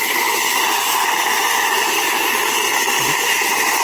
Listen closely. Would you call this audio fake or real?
fake